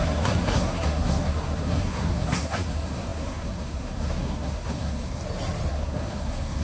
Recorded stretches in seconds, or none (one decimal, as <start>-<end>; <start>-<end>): 5.2-5.7